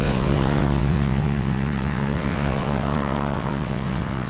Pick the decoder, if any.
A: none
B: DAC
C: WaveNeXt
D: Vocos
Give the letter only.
C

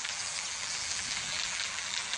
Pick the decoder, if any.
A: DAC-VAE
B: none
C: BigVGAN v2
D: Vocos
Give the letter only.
C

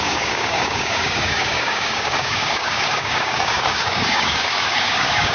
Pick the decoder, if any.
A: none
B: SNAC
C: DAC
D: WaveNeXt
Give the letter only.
C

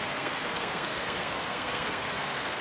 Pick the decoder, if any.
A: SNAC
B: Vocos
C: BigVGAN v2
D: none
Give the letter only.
A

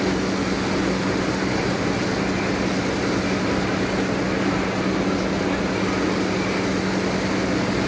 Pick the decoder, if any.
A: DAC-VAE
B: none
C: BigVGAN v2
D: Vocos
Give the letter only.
B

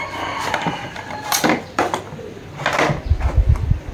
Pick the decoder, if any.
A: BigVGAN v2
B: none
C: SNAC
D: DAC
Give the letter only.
A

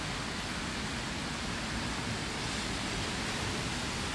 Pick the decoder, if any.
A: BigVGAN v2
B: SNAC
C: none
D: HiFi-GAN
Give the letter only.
C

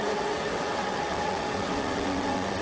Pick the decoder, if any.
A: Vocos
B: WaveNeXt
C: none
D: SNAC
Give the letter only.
B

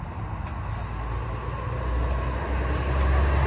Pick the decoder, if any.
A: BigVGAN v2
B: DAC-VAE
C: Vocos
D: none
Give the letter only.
D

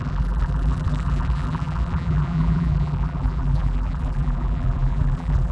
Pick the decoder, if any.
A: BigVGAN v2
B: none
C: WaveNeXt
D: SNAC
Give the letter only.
A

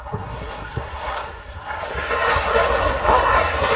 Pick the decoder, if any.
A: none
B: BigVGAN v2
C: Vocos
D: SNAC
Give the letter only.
D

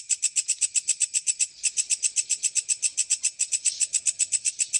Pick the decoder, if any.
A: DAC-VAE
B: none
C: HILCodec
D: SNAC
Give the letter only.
B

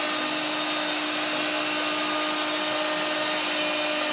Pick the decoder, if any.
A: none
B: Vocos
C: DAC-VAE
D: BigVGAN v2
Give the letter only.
A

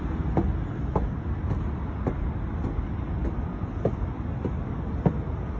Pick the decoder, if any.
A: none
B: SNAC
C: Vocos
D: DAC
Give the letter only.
A